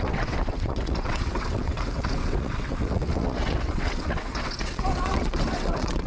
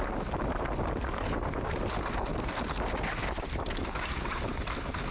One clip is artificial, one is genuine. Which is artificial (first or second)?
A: first